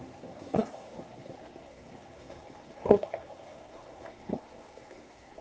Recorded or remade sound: remade